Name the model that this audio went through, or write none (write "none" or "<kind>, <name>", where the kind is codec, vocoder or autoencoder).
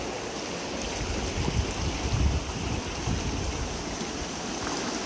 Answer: none